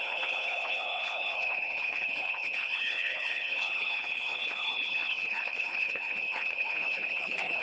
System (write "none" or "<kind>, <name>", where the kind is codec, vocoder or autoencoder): codec, HILCodec